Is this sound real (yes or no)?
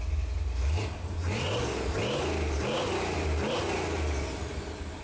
yes